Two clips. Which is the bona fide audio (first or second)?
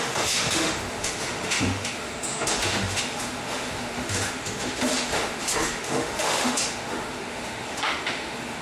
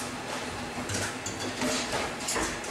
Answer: second